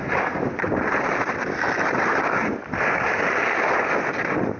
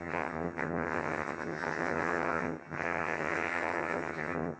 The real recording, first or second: first